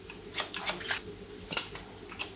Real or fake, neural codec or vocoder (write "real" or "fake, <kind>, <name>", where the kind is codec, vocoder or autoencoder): real